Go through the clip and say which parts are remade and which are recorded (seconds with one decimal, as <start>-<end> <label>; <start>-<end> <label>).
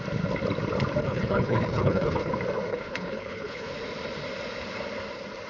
0.0-1.0 recorded; 1.0-2.3 remade; 2.3-2.7 recorded; 2.7-3.7 remade; 3.7-5.5 recorded